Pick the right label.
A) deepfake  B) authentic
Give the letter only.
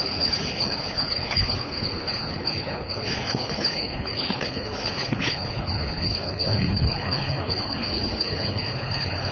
A